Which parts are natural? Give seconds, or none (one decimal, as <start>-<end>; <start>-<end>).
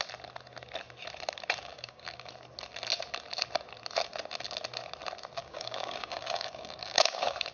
0.0-1.6; 2.3-5.4